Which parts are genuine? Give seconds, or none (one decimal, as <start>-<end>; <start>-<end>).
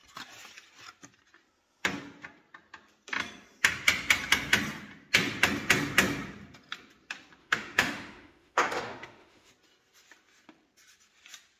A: 0.0-7.4; 9.5-11.6